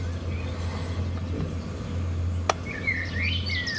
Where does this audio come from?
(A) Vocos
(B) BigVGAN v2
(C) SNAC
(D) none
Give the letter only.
D